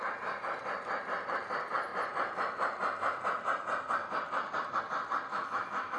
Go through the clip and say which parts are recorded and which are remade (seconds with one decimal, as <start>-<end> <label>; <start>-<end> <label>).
0.0-5.3 recorded; 5.3-6.0 remade

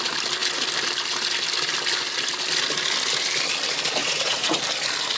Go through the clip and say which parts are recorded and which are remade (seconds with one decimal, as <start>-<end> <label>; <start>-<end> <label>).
0.0-4.0 recorded; 4.0-4.6 remade; 4.6-5.2 recorded

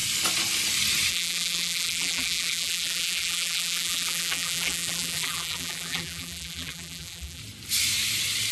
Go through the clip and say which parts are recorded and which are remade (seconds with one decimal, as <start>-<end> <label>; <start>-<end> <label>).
0.0-1.1 recorded; 1.1-7.4 remade; 7.4-8.5 recorded